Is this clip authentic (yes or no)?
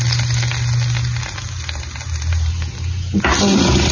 yes